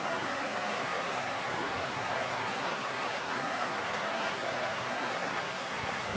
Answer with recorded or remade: remade